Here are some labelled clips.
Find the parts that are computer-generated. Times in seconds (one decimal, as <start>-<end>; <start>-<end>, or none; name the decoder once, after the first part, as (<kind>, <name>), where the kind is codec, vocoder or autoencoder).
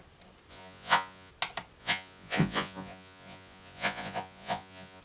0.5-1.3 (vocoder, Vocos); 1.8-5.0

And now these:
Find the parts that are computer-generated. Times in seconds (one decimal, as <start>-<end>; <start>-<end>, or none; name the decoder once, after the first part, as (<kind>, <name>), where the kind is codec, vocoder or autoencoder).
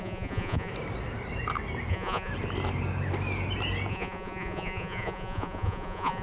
0.0-0.7 (vocoder, Vocos); 1.9-2.3; 3.9-6.2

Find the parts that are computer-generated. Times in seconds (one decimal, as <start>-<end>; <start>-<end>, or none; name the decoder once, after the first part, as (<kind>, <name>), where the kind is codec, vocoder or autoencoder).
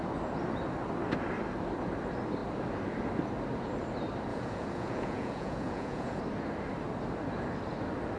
4.3-6.2 (vocoder, Vocos)